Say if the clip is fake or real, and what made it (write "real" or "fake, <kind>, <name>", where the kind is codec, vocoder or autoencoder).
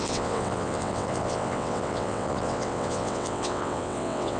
fake, vocoder, WaveNeXt